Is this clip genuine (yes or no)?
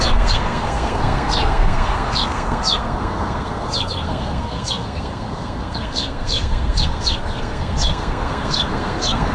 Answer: no